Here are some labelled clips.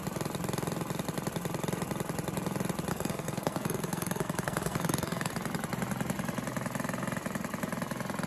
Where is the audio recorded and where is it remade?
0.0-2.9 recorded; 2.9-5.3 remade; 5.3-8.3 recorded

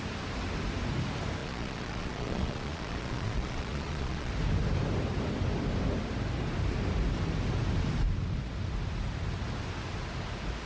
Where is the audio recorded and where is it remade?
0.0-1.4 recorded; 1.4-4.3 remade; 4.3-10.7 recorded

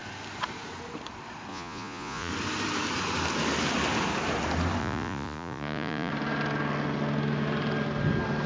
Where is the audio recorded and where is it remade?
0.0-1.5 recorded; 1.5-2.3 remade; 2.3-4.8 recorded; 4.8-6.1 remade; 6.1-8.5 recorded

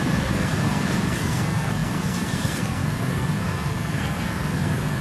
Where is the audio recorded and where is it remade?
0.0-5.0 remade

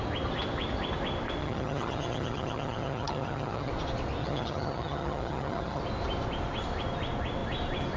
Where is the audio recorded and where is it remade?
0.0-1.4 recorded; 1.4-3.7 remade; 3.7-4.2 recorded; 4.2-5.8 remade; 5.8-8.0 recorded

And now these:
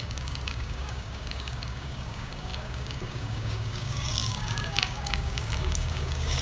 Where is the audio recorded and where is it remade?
0.0-6.4 remade

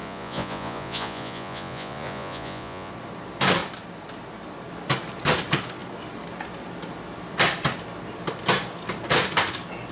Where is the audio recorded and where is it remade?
0.0-2.9 remade; 2.9-9.9 recorded